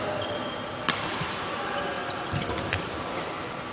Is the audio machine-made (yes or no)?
no